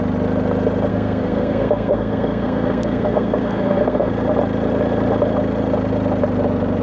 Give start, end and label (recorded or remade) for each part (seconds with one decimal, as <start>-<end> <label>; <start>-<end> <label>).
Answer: 0.0-0.9 recorded; 0.9-4.1 remade; 4.1-6.8 recorded